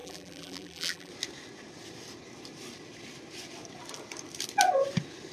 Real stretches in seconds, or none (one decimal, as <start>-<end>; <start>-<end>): 1.1-5.3